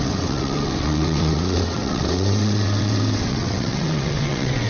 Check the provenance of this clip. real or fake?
fake